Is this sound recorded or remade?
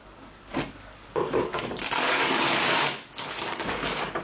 remade